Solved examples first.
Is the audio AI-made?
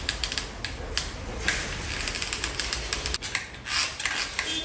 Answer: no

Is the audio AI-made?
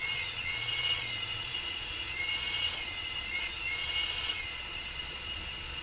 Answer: yes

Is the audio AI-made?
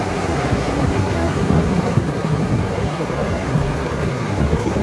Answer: yes